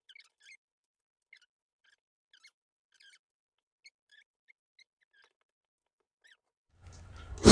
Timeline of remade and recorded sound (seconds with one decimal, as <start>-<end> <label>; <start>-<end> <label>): 0.0-7.5 recorded